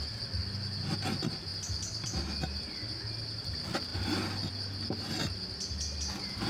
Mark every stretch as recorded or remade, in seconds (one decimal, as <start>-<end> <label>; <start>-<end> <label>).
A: 0.0-6.5 recorded